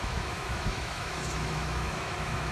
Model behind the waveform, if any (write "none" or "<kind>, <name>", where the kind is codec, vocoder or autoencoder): autoencoder, DAC-VAE